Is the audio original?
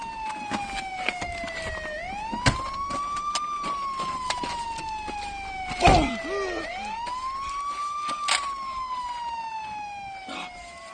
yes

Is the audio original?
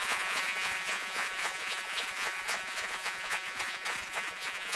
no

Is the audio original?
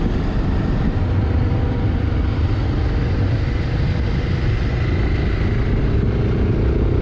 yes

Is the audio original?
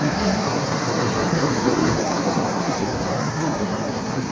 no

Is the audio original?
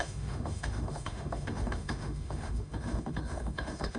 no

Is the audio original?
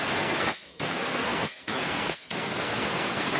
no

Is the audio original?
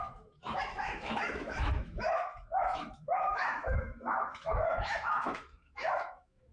no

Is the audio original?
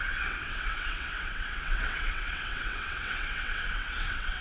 no